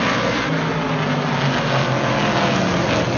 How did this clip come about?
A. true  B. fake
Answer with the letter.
A